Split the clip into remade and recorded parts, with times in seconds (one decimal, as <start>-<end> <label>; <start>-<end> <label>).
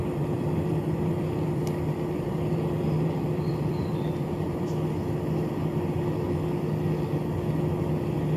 0.0-5.0 remade; 5.0-8.4 recorded